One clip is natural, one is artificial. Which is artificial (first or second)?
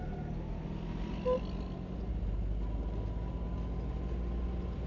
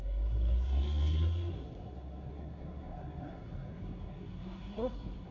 second